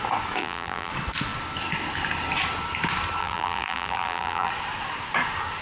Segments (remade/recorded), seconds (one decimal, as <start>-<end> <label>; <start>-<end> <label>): 0.0-0.4 recorded; 0.4-0.9 remade; 0.9-3.2 recorded; 3.2-4.5 remade; 4.5-5.6 recorded